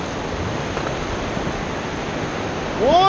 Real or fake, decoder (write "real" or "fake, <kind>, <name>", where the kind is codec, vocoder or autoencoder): real